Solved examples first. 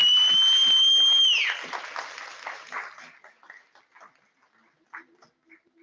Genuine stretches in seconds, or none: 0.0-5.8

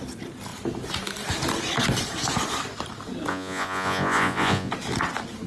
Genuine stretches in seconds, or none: 0.0-3.3; 4.7-5.5

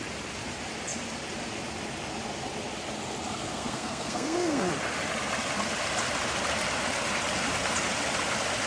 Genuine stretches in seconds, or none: 0.0-3.5; 4.7-8.7

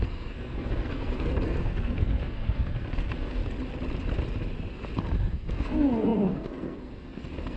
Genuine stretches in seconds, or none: 3.4-5.3